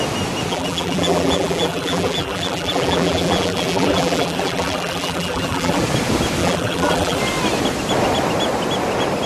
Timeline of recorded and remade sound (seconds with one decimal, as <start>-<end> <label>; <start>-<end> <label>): 0.0-0.5 recorded; 0.5-5.8 remade; 5.8-6.4 recorded; 6.4-7.2 remade; 7.2-9.3 recorded